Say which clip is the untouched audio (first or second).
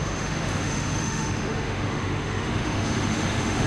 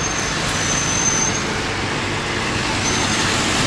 second